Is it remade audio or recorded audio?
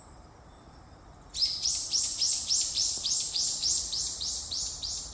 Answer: remade